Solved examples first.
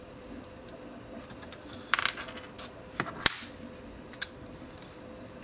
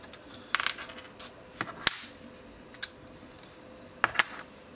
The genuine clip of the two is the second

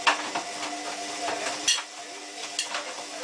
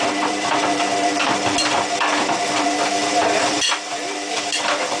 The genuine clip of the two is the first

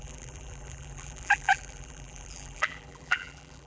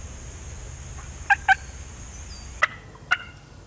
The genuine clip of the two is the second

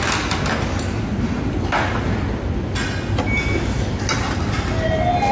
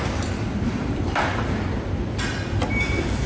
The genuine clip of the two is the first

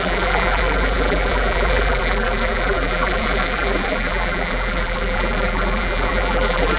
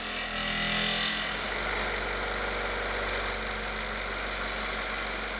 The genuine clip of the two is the second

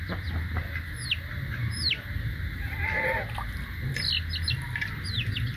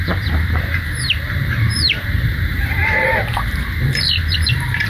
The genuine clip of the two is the first